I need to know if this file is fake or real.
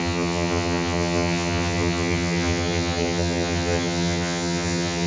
fake